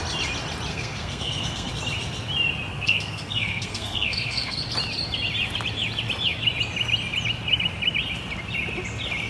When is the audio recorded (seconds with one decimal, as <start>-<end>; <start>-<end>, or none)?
0.0-0.7; 1.7-2.7; 4.6-9.3